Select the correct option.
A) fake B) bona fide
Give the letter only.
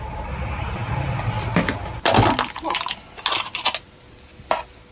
B